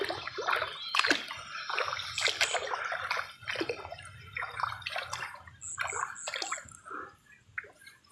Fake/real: real